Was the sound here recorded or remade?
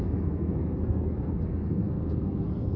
remade